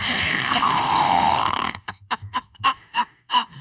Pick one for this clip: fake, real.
fake